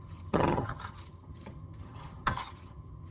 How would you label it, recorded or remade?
remade